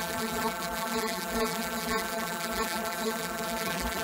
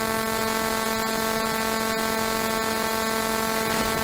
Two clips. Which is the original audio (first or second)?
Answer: second